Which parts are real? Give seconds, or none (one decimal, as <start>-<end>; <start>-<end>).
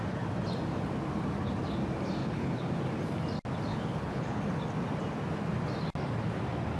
0.0-2.2; 2.7-3.7; 4.4-6.8